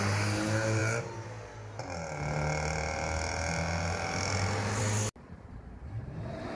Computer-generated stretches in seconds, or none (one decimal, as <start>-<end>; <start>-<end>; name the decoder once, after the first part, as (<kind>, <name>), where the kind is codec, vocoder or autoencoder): none